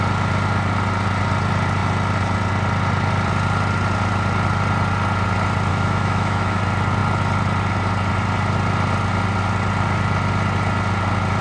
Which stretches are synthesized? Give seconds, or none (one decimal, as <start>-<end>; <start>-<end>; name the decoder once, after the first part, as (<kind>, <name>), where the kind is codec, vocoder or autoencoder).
5.7-6.6 (autoencoder, DAC-VAE)